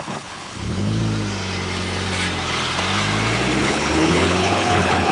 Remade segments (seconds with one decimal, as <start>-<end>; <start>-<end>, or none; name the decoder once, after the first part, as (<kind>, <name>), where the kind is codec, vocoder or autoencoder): 0.0-1.0 (codec, HILCodec); 3.6-5.1